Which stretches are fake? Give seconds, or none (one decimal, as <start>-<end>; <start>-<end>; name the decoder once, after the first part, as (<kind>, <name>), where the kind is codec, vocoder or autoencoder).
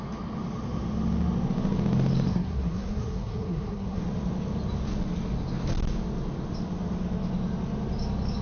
2.3-4.0 (codec, SNAC)